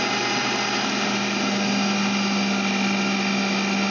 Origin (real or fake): real